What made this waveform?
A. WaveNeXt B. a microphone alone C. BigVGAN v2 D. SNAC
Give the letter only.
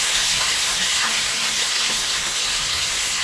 D